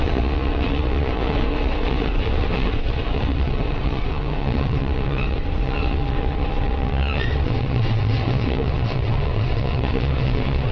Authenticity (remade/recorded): remade